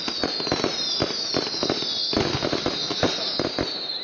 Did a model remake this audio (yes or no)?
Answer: no